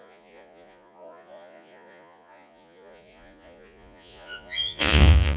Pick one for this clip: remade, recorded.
remade